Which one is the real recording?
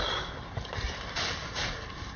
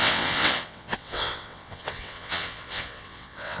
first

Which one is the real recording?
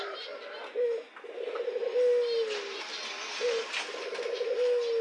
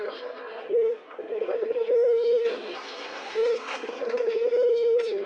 first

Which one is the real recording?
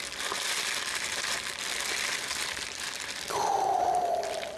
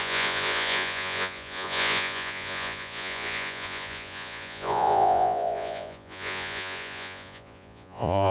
first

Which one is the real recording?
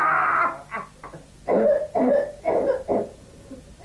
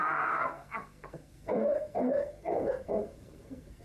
first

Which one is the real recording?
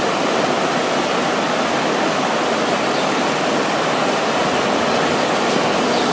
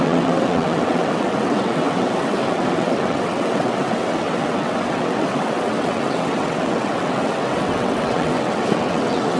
first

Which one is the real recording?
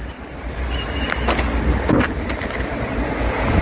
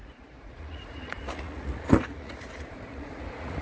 first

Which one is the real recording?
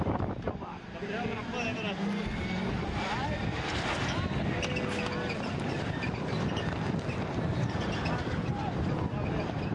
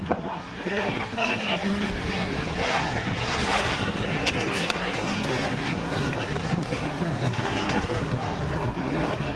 first